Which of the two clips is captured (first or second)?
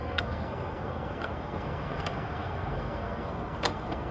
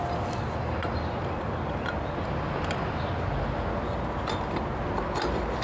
second